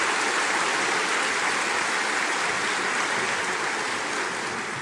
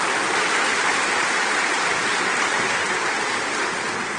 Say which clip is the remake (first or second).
second